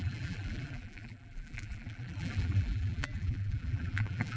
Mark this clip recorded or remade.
remade